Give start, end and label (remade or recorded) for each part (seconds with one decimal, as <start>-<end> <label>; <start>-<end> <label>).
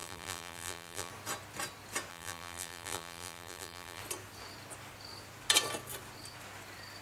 0.0-1.1 remade; 1.1-2.1 recorded; 2.1-4.0 remade; 4.0-7.0 recorded